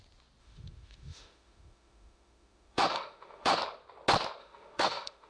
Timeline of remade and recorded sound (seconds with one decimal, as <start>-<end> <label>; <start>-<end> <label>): 0.0-0.4 recorded; 0.4-3.6 remade; 3.6-4.4 recorded; 4.4-5.3 remade